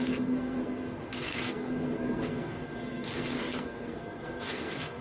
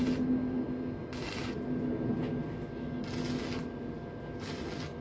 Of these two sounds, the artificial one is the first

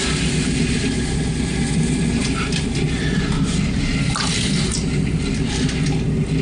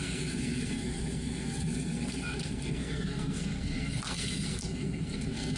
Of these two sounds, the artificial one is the second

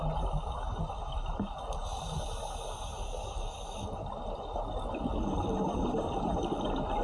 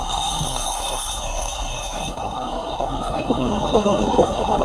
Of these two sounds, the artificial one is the second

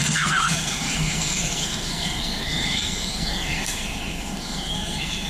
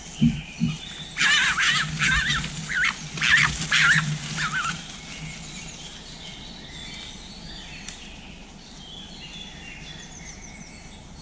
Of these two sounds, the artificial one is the first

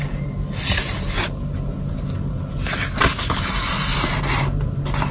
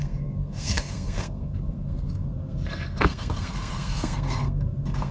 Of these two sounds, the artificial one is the second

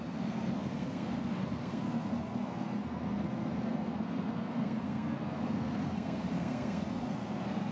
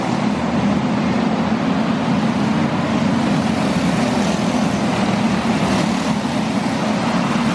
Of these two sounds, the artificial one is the first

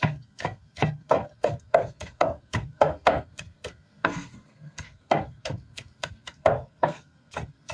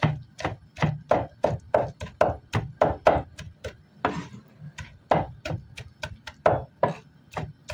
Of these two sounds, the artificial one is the first